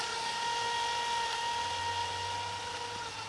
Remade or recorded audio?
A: recorded